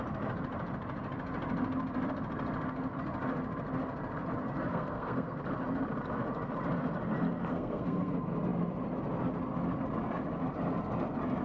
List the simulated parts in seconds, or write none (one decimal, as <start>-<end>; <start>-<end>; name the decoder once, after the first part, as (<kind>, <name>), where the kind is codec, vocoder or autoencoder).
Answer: 4.7-5.4 (codec, SNAC); 7.5-8.1